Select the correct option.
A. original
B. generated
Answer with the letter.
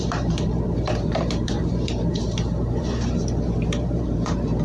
B